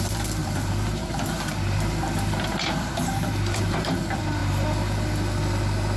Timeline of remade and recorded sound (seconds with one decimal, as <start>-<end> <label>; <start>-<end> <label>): 0.0-4.4 remade; 4.4-6.0 recorded